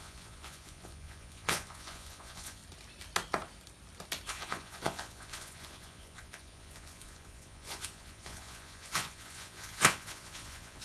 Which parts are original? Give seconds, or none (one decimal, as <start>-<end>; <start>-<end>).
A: 2.6-4.3

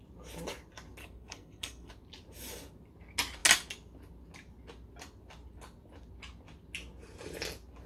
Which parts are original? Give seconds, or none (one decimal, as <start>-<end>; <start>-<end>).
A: 0.0-1.0; 1.9-7.9

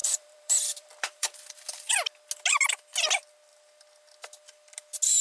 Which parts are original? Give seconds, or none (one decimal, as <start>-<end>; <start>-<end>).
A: 1.9-5.2

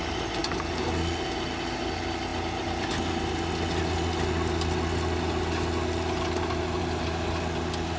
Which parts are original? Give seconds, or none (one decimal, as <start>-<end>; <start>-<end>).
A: 0.0-8.0

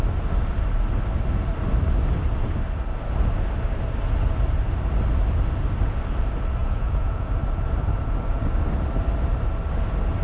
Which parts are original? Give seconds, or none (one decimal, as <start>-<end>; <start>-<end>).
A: 0.0-6.6; 7.3-10.2